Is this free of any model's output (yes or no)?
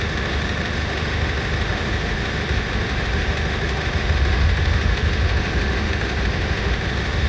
no